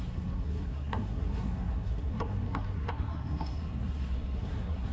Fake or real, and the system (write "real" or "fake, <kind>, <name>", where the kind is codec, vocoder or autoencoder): fake, codec, SNAC